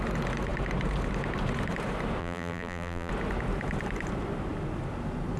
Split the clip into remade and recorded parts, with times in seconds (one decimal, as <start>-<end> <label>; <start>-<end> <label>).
0.0-2.2 recorded; 2.2-3.1 remade; 3.1-5.4 recorded